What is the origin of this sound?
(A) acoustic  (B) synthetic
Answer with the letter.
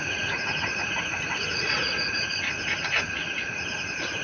B